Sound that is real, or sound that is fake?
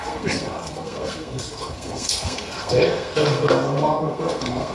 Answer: fake